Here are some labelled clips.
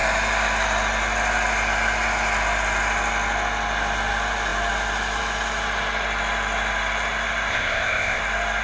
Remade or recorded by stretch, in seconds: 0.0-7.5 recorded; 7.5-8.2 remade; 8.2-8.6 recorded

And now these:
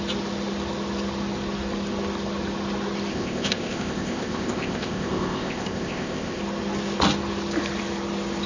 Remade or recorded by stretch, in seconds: 0.0-3.1 recorded; 3.1-6.4 remade; 6.4-8.5 recorded

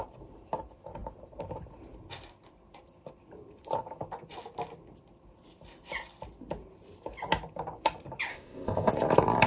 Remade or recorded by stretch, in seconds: 0.0-8.3 recorded; 8.3-8.9 remade; 8.9-9.5 recorded

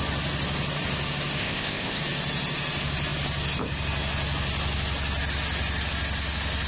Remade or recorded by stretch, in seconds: 0.0-1.4 recorded; 1.4-2.0 remade; 2.0-6.7 recorded

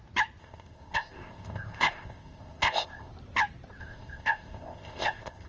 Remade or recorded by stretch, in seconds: 0.0-0.4 recorded; 0.4-3.1 remade; 3.1-3.8 recorded; 3.8-5.5 remade

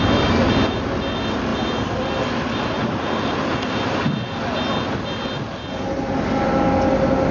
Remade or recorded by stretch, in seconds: 0.0-7.3 recorded

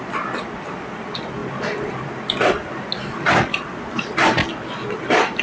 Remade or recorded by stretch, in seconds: 0.0-5.4 recorded

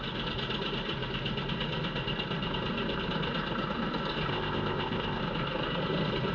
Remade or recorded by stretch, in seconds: 0.0-4.3 recorded; 4.3-5.2 remade; 5.2-6.3 recorded